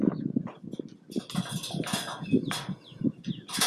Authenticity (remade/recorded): recorded